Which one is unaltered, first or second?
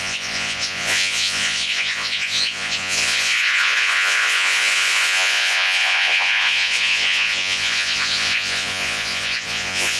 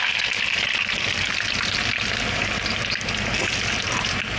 second